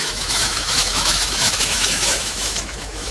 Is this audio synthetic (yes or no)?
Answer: yes